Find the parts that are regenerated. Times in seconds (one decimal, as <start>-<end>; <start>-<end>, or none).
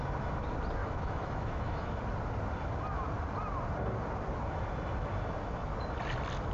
0.8-2.0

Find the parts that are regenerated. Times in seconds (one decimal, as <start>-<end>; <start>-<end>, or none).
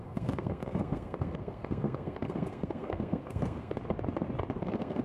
0.0-3.8; 4.6-5.0